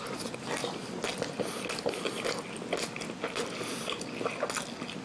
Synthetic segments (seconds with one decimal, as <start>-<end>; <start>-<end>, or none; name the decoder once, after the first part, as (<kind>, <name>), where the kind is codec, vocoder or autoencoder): none